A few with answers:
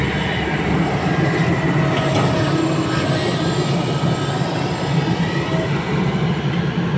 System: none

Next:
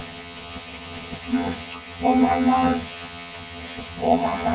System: vocoder, HiFi-GAN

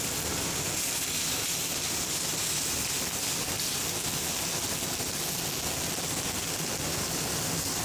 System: none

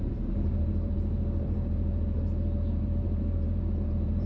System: vocoder, BigVGAN v2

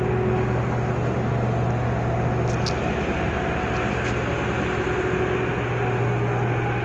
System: none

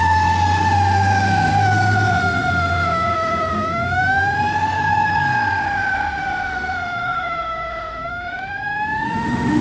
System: autoencoder, DAC-VAE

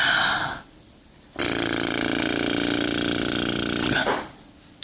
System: none